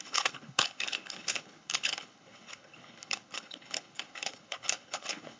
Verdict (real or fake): fake